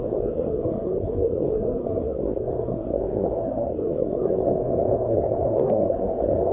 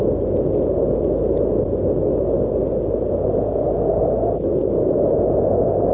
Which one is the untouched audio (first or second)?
second